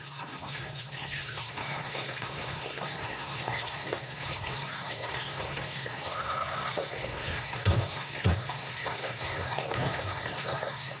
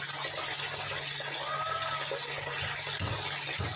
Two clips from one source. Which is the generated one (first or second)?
first